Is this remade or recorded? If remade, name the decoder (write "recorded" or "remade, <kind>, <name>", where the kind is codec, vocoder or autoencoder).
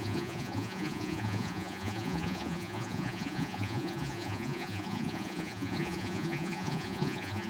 remade, vocoder, Vocos